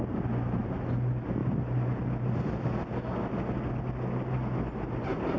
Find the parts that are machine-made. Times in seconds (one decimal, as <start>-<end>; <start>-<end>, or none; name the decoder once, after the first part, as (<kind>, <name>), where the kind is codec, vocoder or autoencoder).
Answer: none